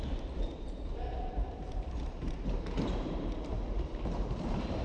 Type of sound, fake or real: fake